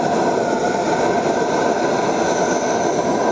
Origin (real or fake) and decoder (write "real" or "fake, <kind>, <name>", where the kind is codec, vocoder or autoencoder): real